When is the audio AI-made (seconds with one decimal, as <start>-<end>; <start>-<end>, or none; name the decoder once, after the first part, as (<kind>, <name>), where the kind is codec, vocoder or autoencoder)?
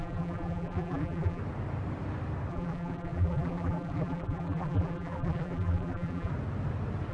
0.0-1.4 (vocoder, BigVGAN v2); 2.5-6.3